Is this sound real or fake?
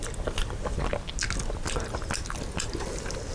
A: real